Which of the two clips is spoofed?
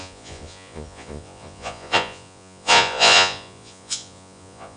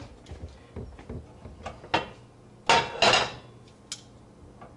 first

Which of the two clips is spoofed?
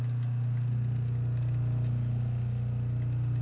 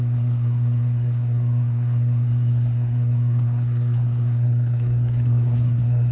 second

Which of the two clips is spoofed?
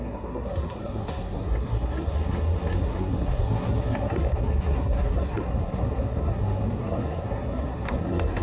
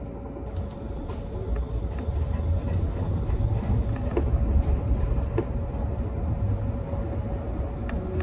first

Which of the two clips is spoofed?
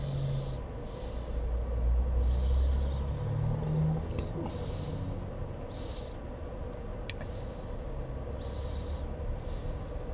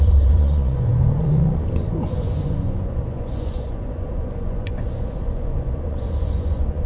second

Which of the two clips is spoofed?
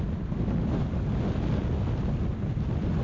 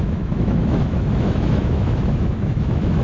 second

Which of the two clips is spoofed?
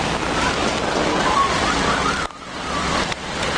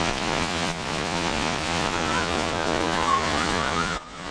second